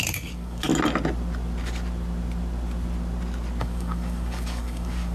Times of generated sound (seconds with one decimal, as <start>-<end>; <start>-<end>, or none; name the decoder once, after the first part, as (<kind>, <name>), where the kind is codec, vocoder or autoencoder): 0.0-0.7 (codec, DAC); 3.6-5.1